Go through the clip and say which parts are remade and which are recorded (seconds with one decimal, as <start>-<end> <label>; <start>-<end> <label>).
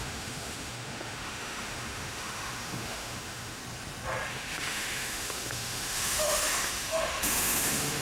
0.0-3.6 remade; 3.6-4.3 recorded; 4.3-8.0 remade